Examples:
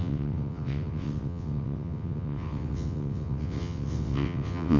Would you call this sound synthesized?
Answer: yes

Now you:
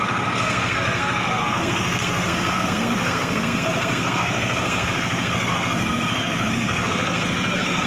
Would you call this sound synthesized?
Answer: yes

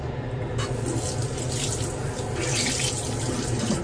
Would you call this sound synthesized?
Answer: no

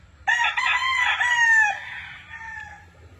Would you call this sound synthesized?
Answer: no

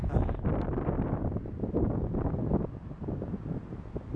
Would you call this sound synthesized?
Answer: no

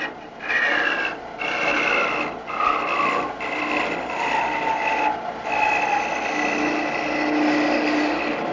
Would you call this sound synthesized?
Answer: no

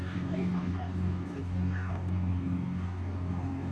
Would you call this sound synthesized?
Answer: yes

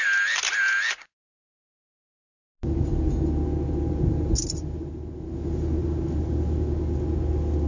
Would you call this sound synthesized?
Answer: no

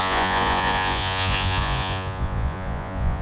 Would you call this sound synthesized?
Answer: yes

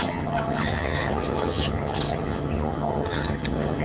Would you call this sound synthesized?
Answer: yes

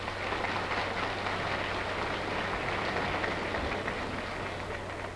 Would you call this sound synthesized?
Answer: no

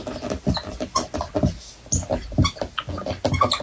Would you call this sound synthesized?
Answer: no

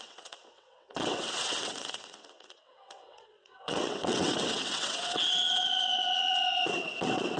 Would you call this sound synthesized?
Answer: yes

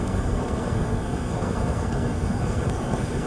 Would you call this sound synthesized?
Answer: yes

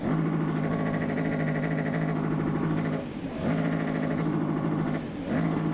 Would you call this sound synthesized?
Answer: no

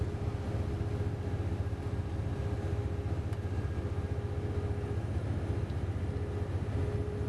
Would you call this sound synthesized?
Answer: no